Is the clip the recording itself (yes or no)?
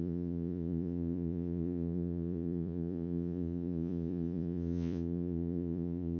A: no